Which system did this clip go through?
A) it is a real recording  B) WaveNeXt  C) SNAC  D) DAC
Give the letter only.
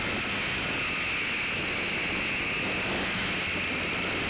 A